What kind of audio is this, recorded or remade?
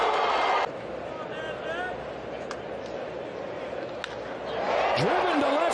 recorded